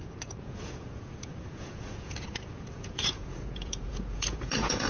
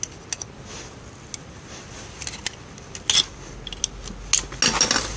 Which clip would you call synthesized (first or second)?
first